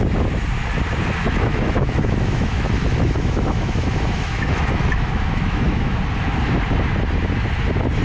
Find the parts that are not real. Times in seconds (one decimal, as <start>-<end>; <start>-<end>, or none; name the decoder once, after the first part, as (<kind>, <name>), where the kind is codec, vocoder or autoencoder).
1.2-6.0 (autoencoder, DAC-VAE)